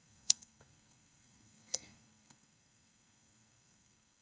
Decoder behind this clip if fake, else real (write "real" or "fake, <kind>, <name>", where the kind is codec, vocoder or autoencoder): fake, codec, SNAC